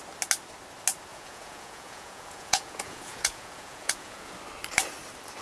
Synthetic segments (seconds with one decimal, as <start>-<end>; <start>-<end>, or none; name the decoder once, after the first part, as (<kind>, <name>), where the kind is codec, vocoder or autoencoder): 1.1-4.3 (vocoder, Vocos)